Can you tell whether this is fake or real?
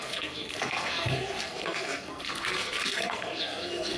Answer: fake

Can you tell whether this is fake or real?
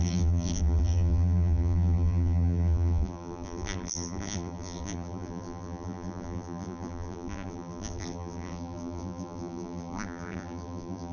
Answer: fake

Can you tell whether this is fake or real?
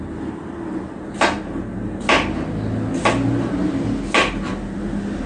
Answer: real